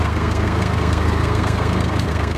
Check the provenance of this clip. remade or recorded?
remade